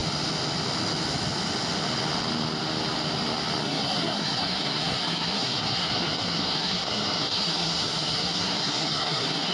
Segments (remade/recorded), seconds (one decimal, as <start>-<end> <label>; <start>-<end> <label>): 0.0-3.6 recorded; 3.6-9.5 remade